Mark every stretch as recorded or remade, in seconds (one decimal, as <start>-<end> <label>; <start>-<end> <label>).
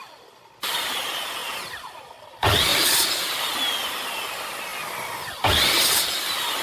0.0-1.4 recorded; 1.4-2.1 remade; 2.1-6.6 recorded